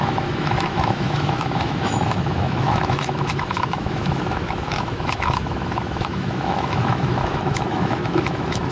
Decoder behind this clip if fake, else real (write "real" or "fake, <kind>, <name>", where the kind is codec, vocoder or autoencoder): fake, autoencoder, DAC-VAE